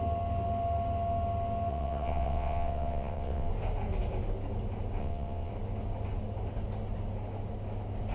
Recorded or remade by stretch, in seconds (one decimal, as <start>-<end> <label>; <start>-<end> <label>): 0.0-1.7 recorded; 1.7-3.5 remade; 3.5-5.0 recorded; 5.0-5.5 remade; 5.5-8.1 recorded